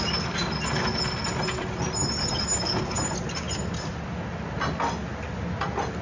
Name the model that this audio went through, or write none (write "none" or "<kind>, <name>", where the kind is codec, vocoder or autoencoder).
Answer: none